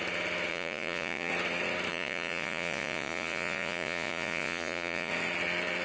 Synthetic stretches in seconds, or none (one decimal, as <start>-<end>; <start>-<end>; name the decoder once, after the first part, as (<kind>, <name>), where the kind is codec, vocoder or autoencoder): 0.5-1.3 (vocoder, Vocos); 1.9-5.1